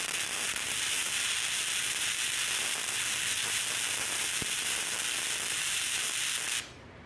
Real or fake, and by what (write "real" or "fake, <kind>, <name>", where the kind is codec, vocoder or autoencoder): real